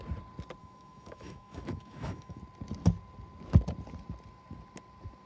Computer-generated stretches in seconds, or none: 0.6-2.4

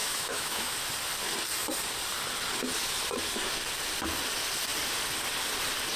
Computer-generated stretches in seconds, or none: 0.0-0.7

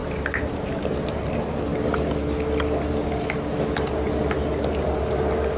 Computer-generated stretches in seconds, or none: none

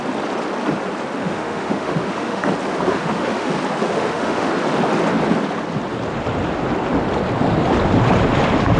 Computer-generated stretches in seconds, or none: 1.2-2.5; 2.9-3.5; 3.9-4.5